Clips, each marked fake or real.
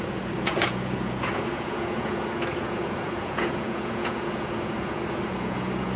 fake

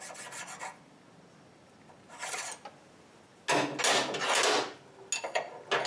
real